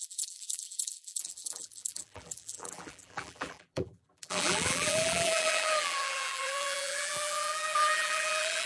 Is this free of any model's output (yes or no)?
no